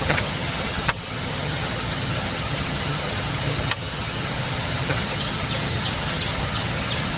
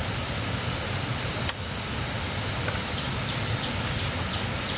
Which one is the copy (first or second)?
first